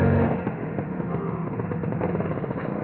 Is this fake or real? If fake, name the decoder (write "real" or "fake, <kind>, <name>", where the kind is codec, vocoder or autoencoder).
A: fake, autoencoder, DAC-VAE